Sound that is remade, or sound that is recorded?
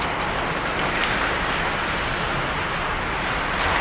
recorded